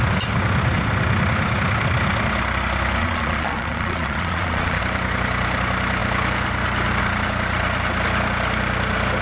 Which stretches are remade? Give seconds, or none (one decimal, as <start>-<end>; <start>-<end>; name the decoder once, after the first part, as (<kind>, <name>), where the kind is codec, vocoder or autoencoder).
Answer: 3.0-4.8 (vocoder, Vocos)